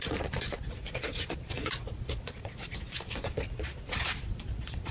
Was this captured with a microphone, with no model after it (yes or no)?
no